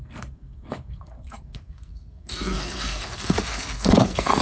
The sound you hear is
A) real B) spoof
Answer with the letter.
B